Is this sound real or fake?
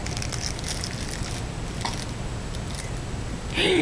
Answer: real